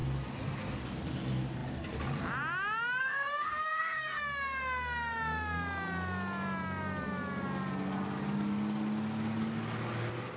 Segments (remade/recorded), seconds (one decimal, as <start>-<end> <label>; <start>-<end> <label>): 0.0-3.0 recorded; 3.0-4.2 remade; 4.2-10.4 recorded